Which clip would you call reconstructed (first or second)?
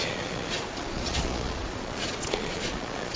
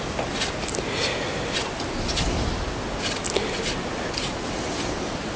first